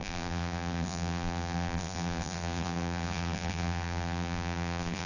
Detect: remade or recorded remade